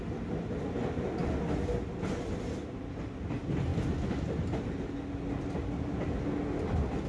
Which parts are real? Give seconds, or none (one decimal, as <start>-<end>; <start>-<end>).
0.0-7.1